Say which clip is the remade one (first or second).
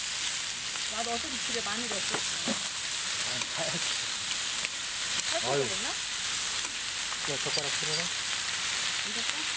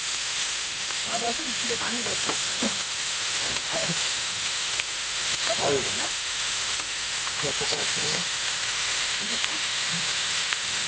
second